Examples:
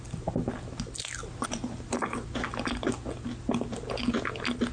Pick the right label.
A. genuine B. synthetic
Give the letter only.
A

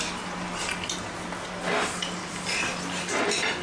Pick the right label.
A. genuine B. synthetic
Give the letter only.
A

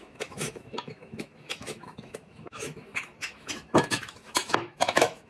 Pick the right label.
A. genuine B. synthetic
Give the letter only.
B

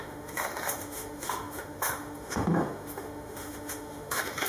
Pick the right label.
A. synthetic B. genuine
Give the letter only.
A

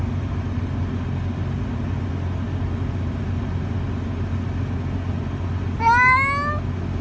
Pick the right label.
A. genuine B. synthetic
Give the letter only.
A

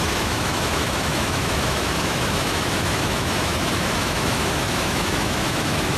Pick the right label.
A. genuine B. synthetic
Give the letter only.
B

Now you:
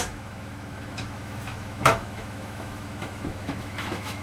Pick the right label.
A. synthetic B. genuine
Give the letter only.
A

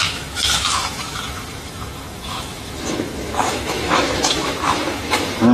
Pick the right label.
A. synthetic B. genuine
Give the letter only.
A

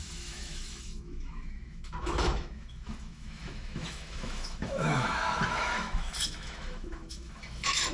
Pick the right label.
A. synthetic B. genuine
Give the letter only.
A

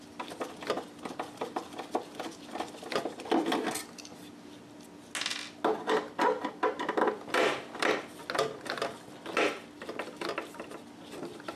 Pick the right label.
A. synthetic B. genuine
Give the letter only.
B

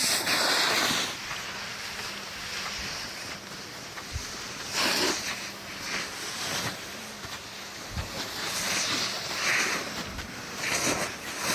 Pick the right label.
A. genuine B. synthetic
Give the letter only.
A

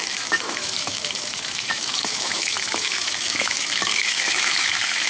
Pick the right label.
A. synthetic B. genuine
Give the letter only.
A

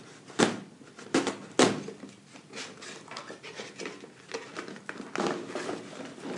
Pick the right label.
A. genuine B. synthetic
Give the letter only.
A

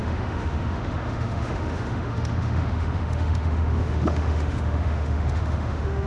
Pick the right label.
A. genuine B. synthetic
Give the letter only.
B